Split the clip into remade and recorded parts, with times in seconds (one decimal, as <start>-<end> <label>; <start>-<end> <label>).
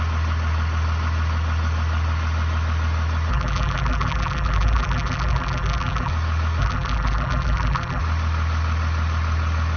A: 0.0-3.3 recorded; 3.3-6.1 remade; 6.1-6.6 recorded; 6.6-8.0 remade; 8.0-9.8 recorded